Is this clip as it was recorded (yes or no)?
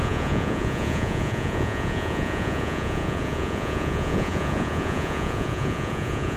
no